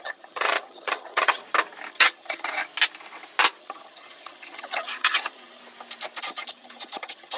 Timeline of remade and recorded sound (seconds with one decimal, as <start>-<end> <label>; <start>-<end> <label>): 0.0-1.4 remade; 1.4-1.9 recorded; 1.9-2.6 remade; 2.6-3.6 recorded; 3.6-5.6 remade; 5.6-6.2 recorded; 6.2-7.4 remade

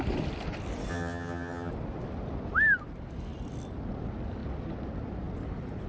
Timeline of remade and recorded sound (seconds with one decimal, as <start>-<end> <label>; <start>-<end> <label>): 0.0-0.9 recorded; 0.9-1.7 remade; 1.7-5.9 recorded

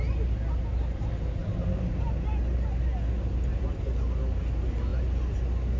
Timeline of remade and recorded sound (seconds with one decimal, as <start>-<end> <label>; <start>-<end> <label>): 0.0-5.8 recorded

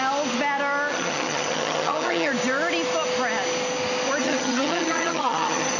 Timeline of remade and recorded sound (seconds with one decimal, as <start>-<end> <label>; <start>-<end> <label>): 0.0-0.9 recorded; 0.9-2.3 remade; 2.3-4.2 recorded; 4.2-5.8 remade

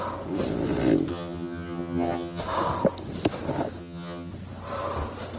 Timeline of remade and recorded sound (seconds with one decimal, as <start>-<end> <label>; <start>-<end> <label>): 0.0-1.1 recorded; 1.1-2.4 remade; 2.4-3.8 recorded; 3.8-4.3 remade; 4.3-5.4 recorded

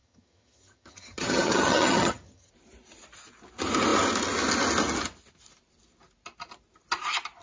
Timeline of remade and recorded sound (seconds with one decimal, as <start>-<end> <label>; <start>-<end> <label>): 0.0-2.5 remade; 2.5-7.4 recorded